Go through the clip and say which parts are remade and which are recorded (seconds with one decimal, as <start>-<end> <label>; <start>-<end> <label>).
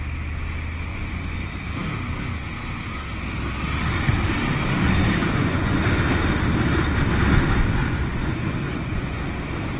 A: 0.0-0.9 recorded; 0.9-1.4 remade; 1.4-5.2 recorded; 5.2-5.8 remade; 5.8-7.8 recorded; 7.8-9.2 remade; 9.2-9.8 recorded